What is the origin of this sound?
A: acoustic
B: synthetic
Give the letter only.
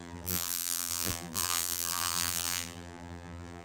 B